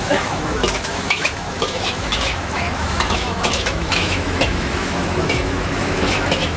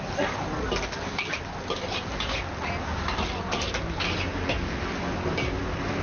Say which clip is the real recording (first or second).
second